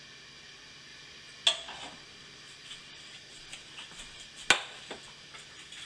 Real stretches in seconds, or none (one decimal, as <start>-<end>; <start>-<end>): 0.0-5.9